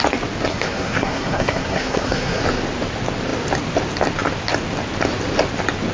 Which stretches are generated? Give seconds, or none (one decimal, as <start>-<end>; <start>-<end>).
0.5-2.4